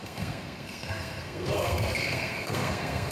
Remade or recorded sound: remade